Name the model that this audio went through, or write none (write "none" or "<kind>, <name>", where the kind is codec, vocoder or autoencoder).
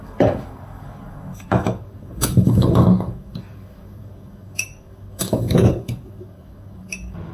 codec, DAC